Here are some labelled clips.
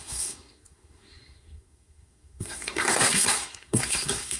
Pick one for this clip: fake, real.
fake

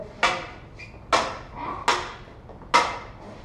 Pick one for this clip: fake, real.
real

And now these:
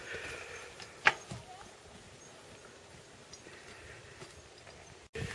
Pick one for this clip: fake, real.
real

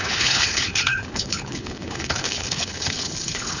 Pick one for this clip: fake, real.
fake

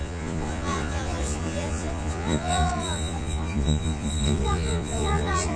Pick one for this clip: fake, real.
fake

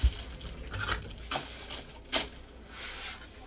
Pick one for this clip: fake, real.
real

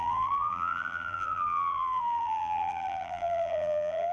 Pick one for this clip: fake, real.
fake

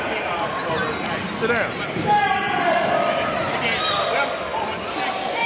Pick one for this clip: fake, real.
real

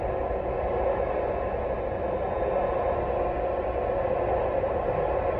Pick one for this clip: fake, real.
real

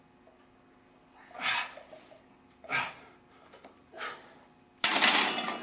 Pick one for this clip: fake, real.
real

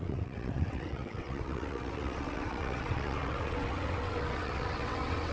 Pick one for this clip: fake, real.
fake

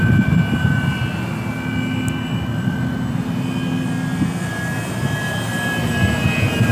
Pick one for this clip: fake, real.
real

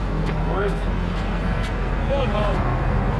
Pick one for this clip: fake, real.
fake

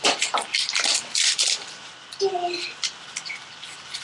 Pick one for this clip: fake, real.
real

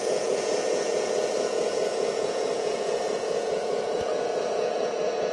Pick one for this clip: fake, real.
fake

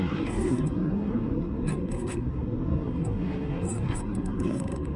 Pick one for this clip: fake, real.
fake